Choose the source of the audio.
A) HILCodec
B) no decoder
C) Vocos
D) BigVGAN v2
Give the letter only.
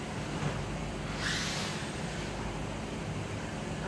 B